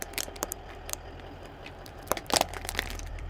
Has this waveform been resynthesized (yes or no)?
yes